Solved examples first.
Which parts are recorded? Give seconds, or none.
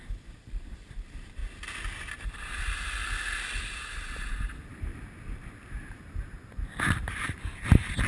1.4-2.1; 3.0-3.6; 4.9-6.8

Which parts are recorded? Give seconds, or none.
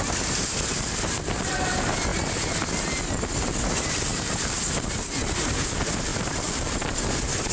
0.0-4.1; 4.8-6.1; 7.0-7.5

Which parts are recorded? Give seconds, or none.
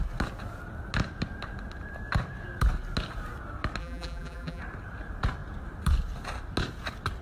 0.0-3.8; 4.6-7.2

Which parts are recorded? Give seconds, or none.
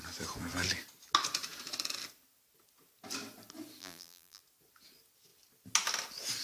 0.0-3.8; 4.4-6.4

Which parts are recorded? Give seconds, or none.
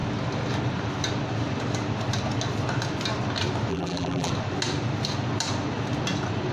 0.0-3.7; 4.3-6.5